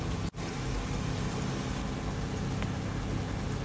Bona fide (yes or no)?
yes